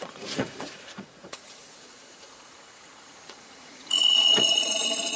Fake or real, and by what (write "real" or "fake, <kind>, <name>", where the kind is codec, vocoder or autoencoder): fake, vocoder, Vocos